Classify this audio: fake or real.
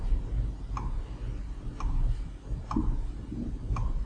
real